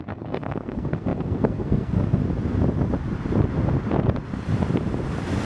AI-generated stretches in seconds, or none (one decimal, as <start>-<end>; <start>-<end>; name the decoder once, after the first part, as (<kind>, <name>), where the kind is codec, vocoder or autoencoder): 0.0-2.2 (codec, SNAC)